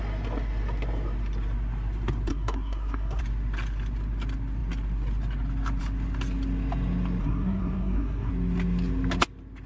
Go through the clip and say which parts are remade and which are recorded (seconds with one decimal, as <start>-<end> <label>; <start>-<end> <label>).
0.0-2.3 recorded; 2.3-3.2 remade; 3.2-7.2 recorded; 7.2-8.3 remade; 8.3-9.7 recorded